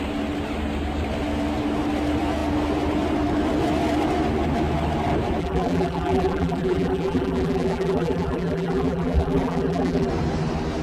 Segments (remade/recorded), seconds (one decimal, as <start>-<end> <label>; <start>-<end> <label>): 0.0-5.4 recorded; 5.4-10.1 remade; 10.1-10.8 recorded